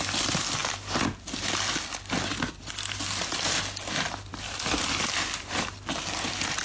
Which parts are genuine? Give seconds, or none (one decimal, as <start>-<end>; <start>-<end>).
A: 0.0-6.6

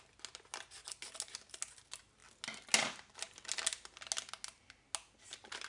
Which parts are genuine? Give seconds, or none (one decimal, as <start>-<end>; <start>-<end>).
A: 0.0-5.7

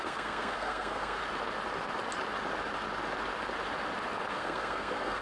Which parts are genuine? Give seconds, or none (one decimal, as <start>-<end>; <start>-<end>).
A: 1.2-4.3

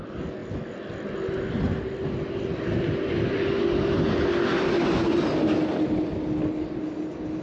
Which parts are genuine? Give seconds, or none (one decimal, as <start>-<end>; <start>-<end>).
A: 0.0-7.4

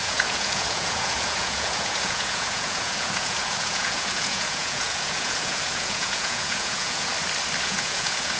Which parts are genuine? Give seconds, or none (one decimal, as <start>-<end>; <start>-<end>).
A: 7.1-7.6

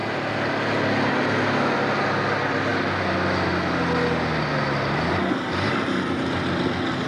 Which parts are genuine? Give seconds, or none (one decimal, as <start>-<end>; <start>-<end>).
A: 0.0-7.1